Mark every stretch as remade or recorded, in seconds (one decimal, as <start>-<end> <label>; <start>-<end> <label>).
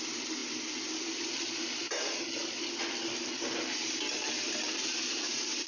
0.0-5.7 recorded